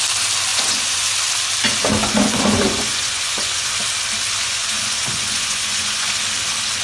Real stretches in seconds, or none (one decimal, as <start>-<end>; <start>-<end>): 0.0-0.5; 1.1-2.0; 3.7-4.4; 6.1-6.8